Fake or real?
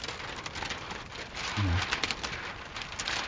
real